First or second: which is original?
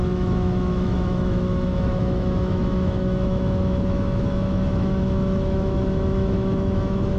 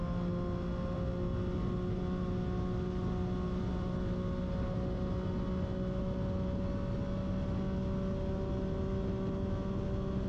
second